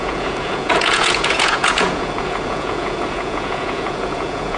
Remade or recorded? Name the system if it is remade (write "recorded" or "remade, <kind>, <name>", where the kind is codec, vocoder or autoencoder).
remade, vocoder, Vocos